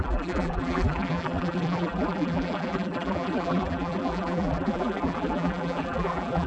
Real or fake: fake